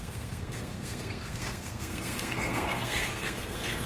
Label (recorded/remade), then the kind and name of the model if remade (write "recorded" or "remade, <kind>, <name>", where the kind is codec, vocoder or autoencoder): remade, codec, SNAC